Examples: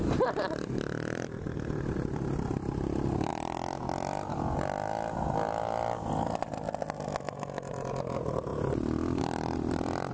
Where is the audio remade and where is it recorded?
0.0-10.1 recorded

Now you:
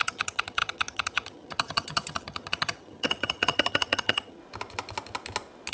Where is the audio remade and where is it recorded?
0.0-4.4 remade; 4.4-5.7 recorded

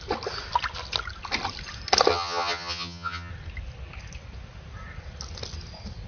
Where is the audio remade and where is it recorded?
0.0-2.1 recorded; 2.1-3.3 remade; 3.3-6.1 recorded

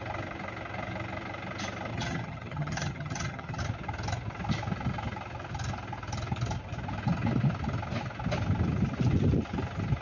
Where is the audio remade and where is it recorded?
0.0-1.9 recorded; 1.9-3.6 remade; 3.6-10.0 recorded